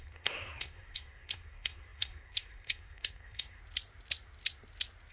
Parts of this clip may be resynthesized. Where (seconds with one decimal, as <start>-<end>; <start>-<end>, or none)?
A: 0.0-3.6